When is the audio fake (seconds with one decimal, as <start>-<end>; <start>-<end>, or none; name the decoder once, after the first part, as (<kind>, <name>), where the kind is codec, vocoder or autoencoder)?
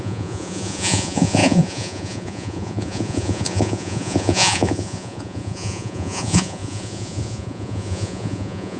0.0-8.8 (vocoder, Vocos)